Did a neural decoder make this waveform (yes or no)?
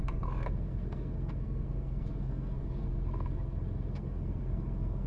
yes